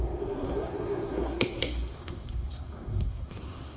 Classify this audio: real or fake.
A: fake